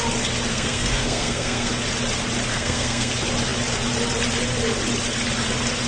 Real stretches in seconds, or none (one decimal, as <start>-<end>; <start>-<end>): 0.0-0.5; 1.7-2.5; 3.1-5.9